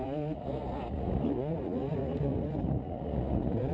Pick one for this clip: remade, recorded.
remade